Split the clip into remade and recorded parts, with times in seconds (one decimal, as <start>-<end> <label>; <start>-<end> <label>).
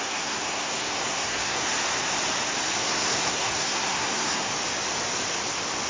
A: 0.0-1.7 remade; 1.7-2.8 recorded; 2.8-4.5 remade; 4.5-5.9 recorded